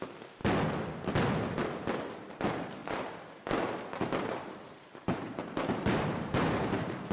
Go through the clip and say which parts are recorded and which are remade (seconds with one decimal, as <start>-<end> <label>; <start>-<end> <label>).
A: 0.0-2.8 recorded; 2.8-7.1 remade